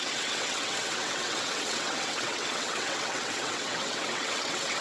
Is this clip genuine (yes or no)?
no